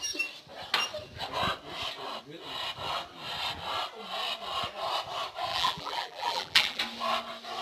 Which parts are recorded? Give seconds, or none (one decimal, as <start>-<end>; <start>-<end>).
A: 0.0-5.5; 6.8-7.6